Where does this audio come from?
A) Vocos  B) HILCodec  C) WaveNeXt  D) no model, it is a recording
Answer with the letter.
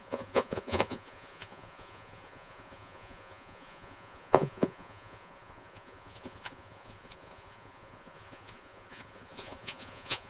A